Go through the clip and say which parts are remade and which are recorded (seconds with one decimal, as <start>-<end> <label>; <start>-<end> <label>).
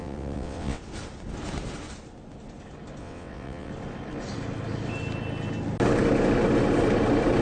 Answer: 0.0-0.8 remade; 0.8-3.0 recorded; 3.0-3.7 remade; 3.7-7.4 recorded